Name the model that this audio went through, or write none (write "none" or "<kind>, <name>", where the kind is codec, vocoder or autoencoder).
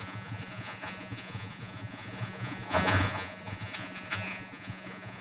vocoder, Vocos